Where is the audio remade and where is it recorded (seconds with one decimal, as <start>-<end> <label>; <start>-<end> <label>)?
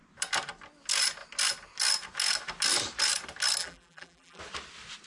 0.0-3.6 recorded; 3.6-4.4 remade; 4.4-5.1 recorded